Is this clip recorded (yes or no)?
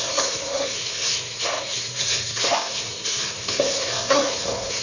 no